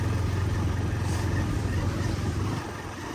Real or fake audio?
real